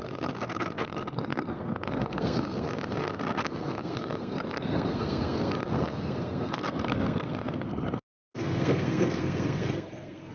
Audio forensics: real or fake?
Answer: fake